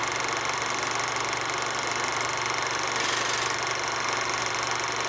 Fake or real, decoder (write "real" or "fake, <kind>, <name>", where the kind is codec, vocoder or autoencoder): real